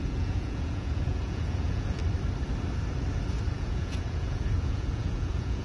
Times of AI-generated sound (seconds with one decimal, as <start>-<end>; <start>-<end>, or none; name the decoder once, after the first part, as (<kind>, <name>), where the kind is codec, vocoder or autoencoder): 0.0-2.0 (vocoder, Vocos); 3.5-5.6